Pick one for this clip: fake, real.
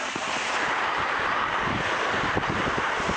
real